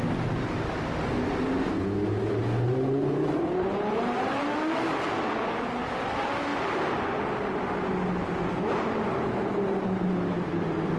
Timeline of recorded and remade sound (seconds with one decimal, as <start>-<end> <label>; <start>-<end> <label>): 0.0-11.0 recorded

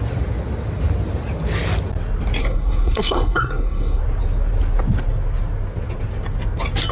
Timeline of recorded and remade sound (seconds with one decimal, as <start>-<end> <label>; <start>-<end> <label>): 0.0-2.4 recorded; 2.4-4.0 remade; 4.0-6.9 recorded

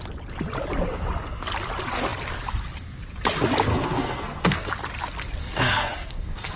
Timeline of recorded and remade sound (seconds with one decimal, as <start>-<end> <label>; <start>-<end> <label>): 0.0-3.7 recorded; 3.7-4.7 remade; 4.7-5.4 recorded; 5.4-6.6 remade

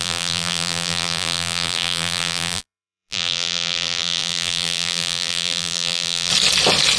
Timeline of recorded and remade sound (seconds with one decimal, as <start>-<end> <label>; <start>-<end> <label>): 0.0-6.3 remade; 6.3-7.0 recorded

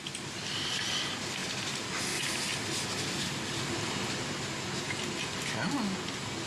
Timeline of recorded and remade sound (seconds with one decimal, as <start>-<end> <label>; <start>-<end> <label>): 0.0-6.5 recorded

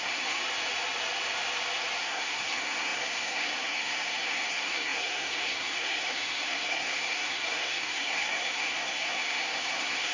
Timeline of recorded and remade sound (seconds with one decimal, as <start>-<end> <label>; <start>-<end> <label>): 0.0-0.4 remade; 0.4-2.0 recorded; 2.0-10.1 remade